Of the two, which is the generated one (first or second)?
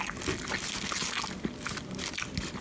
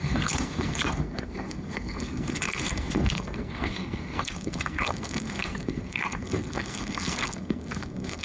second